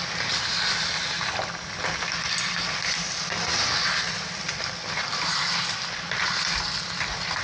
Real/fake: real